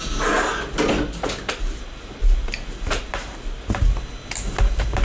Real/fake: real